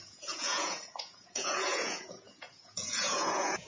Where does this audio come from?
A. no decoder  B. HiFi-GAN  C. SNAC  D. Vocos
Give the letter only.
D